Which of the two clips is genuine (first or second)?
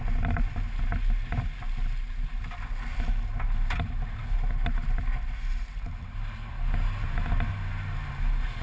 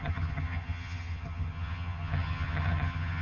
first